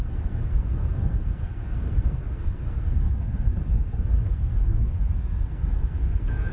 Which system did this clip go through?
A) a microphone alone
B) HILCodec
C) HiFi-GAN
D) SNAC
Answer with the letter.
D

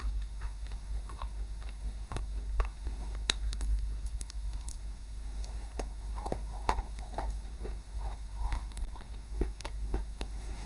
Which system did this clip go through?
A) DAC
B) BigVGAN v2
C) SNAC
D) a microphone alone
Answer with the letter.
C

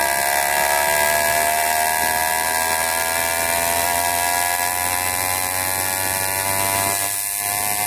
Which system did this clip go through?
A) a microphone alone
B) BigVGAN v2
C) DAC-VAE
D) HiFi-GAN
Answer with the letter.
A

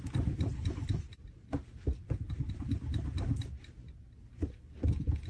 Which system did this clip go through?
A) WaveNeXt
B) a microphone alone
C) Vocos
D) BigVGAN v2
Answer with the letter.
B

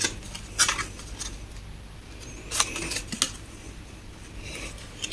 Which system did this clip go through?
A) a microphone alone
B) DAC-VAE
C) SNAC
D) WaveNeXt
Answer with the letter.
A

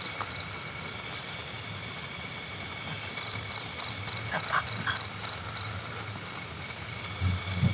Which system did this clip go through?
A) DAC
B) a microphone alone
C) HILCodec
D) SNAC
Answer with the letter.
B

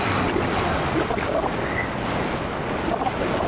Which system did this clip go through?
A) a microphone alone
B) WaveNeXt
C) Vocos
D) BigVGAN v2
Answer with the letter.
A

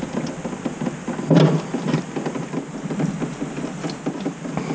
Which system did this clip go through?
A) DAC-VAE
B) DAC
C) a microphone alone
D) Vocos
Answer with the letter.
C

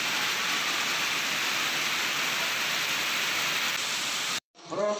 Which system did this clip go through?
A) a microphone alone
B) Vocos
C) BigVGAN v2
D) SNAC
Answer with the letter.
C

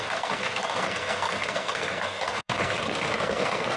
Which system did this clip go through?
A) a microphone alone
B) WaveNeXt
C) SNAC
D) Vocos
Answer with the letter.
C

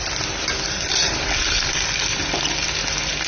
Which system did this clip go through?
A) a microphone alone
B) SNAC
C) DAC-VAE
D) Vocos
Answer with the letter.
A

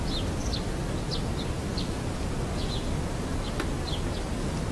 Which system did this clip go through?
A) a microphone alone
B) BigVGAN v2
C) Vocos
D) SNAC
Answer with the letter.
A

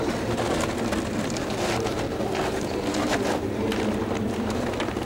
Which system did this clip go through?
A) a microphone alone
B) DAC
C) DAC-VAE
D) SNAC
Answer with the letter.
A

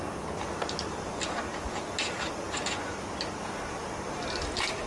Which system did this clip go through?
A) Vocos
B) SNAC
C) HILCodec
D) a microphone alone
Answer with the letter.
D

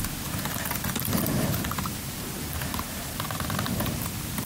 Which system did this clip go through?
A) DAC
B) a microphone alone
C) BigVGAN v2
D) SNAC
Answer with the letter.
B